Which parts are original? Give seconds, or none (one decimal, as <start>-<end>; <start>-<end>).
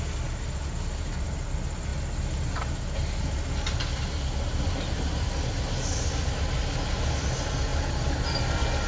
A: 0.0-8.9